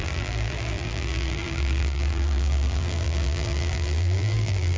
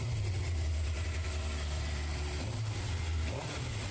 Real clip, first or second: second